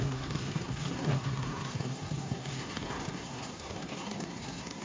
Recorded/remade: remade